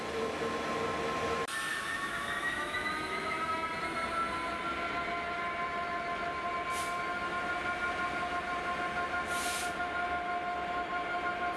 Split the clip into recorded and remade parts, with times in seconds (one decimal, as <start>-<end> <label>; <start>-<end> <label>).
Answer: 0.0-1.7 recorded; 1.7-3.8 remade; 3.8-11.6 recorded